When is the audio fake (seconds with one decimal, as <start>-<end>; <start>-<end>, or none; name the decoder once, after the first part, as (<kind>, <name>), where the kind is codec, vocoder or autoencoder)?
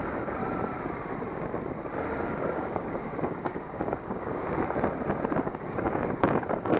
0.0-0.4 (codec, DAC); 2.3-4.4; 5.4-6.8